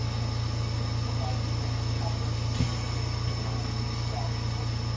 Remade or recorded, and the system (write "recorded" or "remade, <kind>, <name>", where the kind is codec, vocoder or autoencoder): recorded